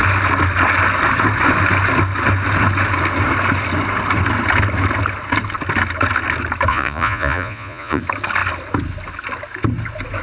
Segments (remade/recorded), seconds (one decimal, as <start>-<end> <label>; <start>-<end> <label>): 0.0-6.7 recorded; 6.7-8.0 remade; 8.0-10.2 recorded